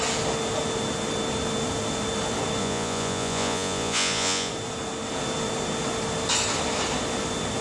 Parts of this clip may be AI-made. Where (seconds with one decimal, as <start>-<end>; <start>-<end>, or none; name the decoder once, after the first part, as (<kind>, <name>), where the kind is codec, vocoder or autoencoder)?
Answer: 2.6-4.5 (vocoder, Vocos)